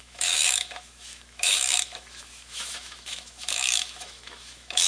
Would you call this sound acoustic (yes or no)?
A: no